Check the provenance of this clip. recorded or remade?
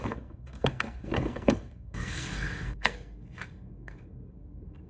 remade